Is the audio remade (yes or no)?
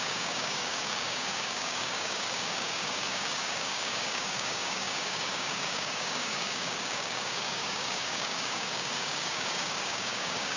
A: yes